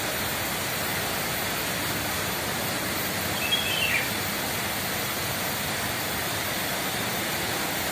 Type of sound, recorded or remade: recorded